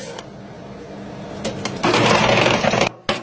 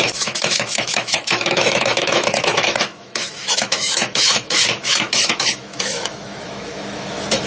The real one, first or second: first